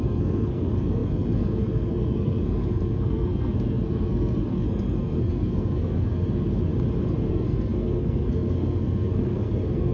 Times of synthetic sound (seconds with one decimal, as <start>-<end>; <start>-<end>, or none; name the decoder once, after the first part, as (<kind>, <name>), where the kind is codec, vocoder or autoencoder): 0.0-6.7 (codec, SNAC); 7.3-9.9